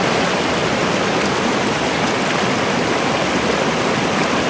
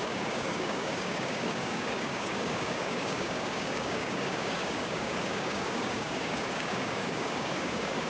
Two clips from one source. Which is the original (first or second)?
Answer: first